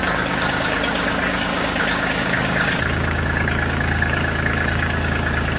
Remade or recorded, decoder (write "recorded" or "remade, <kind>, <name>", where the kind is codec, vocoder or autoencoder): remade, codec, DAC